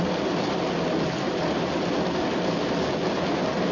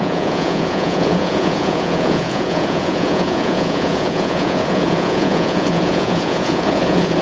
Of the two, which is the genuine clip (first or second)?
first